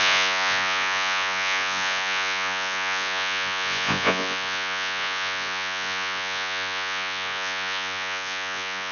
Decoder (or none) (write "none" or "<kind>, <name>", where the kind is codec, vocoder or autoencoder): vocoder, Vocos